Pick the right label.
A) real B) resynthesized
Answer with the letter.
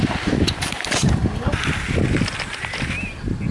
A